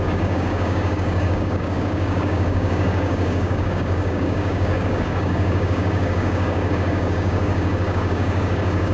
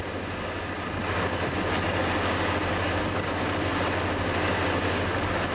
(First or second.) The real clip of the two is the second